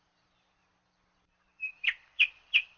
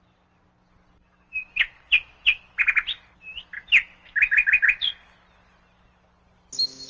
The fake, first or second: first